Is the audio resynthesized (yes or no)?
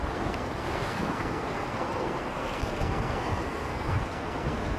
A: yes